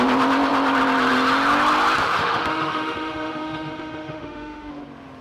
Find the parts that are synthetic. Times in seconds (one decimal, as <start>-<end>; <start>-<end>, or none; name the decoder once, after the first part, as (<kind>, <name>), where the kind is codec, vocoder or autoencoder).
2.0-4.7 (autoencoder, DAC-VAE)